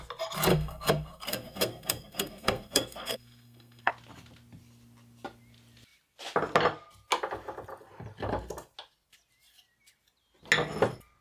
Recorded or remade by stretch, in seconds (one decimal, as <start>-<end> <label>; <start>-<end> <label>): 0.0-0.5 recorded; 0.5-3.9 remade; 3.9-11.2 recorded